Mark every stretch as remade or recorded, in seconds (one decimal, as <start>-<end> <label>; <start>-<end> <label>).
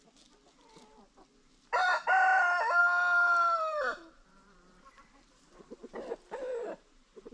0.0-2.8 recorded; 2.8-5.8 remade; 5.8-6.5 recorded; 6.5-7.3 remade